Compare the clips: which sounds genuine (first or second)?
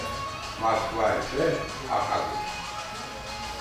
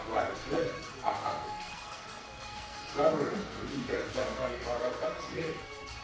first